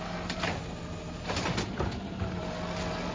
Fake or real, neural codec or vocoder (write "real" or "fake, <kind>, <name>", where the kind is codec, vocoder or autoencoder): real